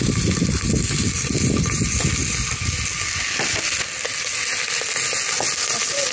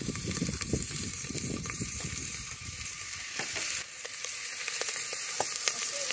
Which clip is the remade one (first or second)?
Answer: second